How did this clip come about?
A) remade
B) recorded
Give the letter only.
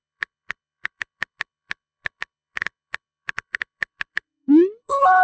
A